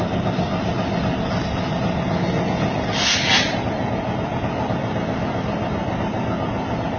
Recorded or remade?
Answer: recorded